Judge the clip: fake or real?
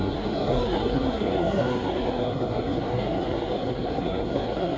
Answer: fake